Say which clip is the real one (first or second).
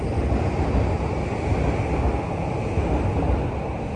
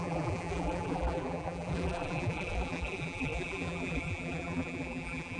first